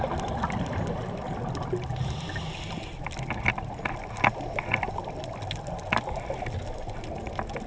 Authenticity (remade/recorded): recorded